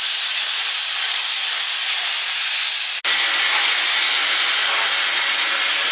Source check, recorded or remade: recorded